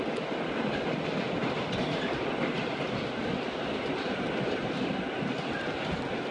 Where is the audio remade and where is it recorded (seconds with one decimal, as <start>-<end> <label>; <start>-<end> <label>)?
0.0-6.3 recorded